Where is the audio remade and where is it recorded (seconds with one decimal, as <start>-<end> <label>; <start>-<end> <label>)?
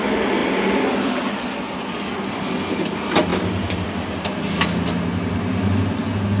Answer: 0.0-6.4 recorded